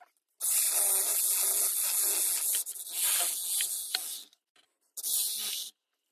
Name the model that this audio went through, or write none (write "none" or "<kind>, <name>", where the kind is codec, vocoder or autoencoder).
none